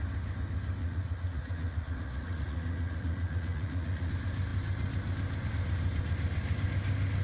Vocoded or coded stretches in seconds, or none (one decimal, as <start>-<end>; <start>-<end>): 0.8-4.1